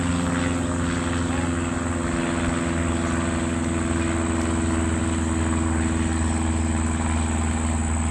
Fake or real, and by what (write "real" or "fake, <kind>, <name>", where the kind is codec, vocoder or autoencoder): real